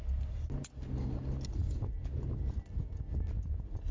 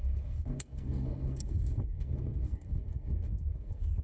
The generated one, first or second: second